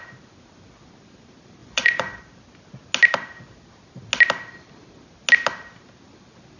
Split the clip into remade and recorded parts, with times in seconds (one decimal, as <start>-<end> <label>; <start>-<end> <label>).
0.0-1.6 recorded; 1.6-2.2 remade; 2.2-6.6 recorded